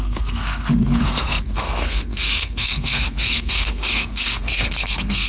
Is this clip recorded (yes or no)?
no